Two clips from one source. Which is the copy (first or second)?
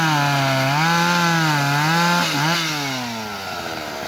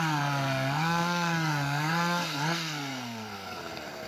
second